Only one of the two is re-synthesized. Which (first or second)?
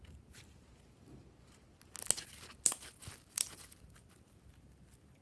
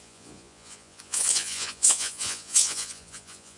second